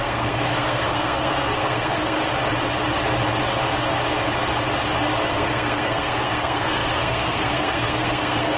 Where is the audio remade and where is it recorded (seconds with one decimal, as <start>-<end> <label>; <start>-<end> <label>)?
0.0-2.2 remade; 2.2-5.3 recorded; 5.3-8.6 remade